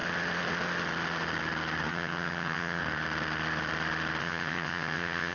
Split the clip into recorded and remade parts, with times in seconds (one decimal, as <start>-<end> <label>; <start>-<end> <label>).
0.0-1.9 recorded; 1.9-2.8 remade; 2.8-4.2 recorded; 4.2-5.3 remade